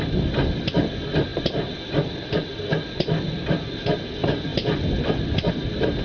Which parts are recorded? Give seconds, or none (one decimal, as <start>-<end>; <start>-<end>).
0.0-6.0